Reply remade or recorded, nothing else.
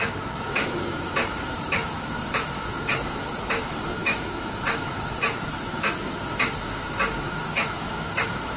remade